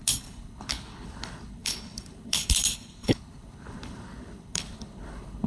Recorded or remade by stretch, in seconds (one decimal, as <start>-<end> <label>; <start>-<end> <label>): 0.0-5.5 remade